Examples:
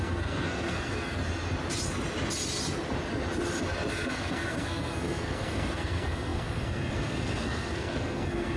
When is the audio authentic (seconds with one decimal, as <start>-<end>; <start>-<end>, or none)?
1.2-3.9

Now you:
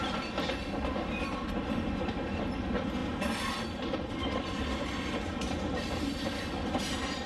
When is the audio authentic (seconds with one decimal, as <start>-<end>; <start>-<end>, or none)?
0.0-7.3

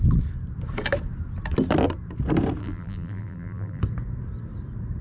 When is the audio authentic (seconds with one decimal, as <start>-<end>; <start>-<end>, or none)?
0.0-2.6; 3.8-5.0

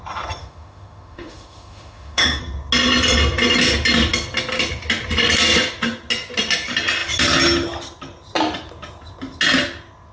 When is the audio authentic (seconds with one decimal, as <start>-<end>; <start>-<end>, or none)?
0.0-0.4; 2.4-10.1